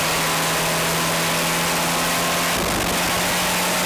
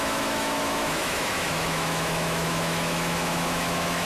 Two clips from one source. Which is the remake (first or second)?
second